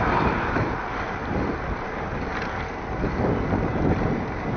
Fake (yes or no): no